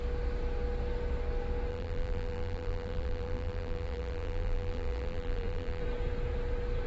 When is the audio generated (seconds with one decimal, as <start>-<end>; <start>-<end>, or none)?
1.7-5.8

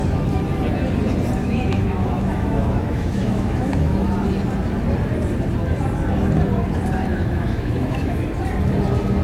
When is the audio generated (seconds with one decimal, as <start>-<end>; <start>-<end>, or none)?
1.4-4.1; 7.1-8.2

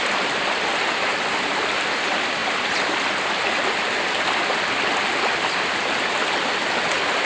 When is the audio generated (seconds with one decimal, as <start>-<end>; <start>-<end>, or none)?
none

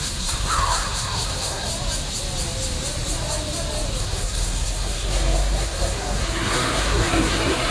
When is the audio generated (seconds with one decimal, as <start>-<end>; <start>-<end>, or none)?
0.0-1.7; 4.0-7.7

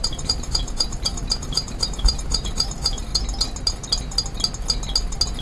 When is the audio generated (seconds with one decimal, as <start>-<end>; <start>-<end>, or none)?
0.0-3.1

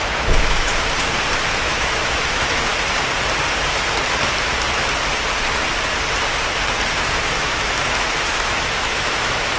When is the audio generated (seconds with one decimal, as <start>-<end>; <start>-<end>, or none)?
0.0-0.7; 1.5-2.7; 6.9-9.6